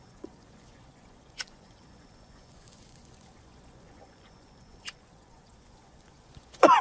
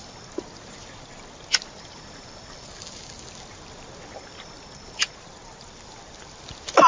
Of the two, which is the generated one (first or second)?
first